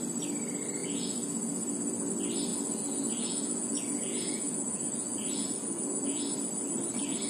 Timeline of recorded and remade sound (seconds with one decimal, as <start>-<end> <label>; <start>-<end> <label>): 0.0-0.8 recorded; 0.8-2.1 remade; 2.1-2.5 recorded; 2.5-6.2 remade; 6.2-7.3 recorded